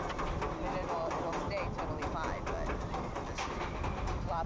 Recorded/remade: recorded